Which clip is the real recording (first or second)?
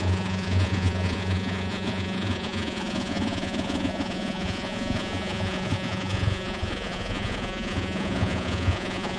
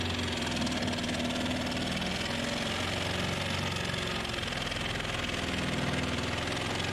second